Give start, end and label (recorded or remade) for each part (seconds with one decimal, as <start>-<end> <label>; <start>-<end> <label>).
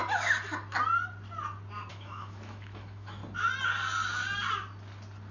0.0-1.9 recorded; 1.9-3.2 remade; 3.2-5.3 recorded